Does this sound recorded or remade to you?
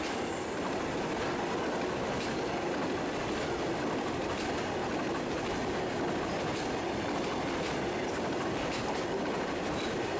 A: recorded